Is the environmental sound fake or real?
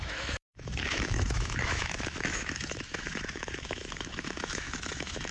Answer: fake